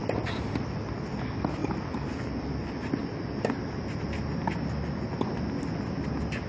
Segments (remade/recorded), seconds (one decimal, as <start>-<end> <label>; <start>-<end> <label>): 0.0-6.5 recorded